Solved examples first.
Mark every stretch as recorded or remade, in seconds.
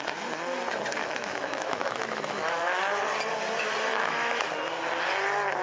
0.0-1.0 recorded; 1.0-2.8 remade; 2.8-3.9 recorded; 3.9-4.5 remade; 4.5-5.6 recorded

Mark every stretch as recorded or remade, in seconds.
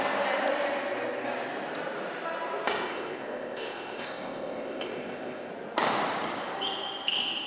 0.0-2.9 recorded; 2.9-5.5 remade; 5.5-7.5 recorded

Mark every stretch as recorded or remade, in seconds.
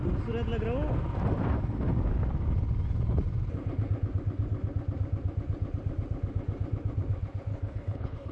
0.0-7.5 recorded; 7.5-8.3 remade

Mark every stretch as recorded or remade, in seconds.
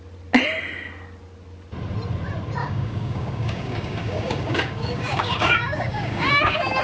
0.0-2.6 recorded; 2.6-6.8 remade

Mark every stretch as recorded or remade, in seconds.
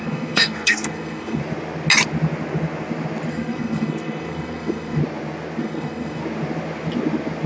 0.0-1.4 remade; 1.4-3.3 recorded; 3.3-5.0 remade; 5.0-5.6 recorded; 5.6-6.2 remade; 6.2-7.5 recorded